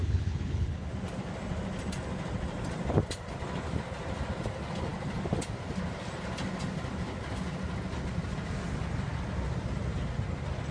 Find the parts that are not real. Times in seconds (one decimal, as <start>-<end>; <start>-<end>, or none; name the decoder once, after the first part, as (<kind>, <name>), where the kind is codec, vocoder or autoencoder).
0.0-0.9 (codec, HILCodec)